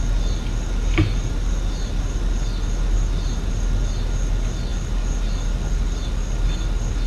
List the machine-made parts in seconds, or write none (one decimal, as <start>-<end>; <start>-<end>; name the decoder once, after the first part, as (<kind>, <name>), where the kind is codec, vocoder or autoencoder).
none